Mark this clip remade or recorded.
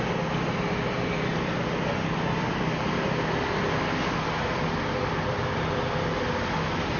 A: recorded